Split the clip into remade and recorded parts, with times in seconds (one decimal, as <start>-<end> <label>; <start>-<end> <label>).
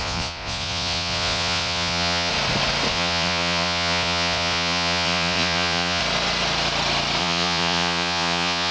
0.0-2.3 remade; 2.3-2.9 recorded; 2.9-6.0 remade; 6.0-7.2 recorded; 7.2-8.7 remade